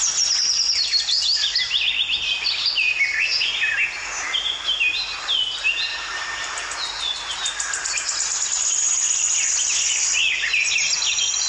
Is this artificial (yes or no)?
no